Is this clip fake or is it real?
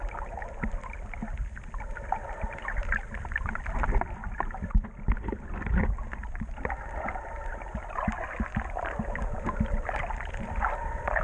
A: real